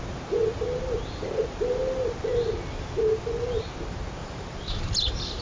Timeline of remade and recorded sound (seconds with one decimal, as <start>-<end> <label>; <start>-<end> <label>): 0.0-4.2 recorded; 4.2-5.4 remade